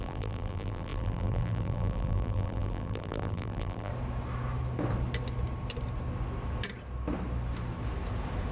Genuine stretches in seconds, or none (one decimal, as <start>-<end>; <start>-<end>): 3.9-8.5